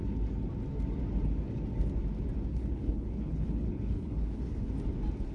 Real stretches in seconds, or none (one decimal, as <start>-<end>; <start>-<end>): 0.0-2.5; 4.7-5.3